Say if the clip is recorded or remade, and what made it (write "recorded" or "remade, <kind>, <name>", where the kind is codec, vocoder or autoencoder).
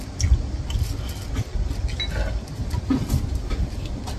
recorded